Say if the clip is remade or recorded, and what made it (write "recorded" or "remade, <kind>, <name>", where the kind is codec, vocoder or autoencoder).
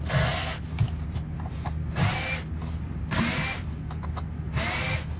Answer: recorded